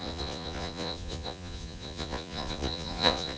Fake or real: fake